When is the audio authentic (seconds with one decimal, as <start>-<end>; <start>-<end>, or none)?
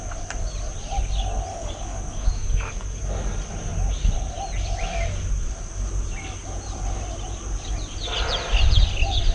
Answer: 0.0-1.5; 3.0-9.3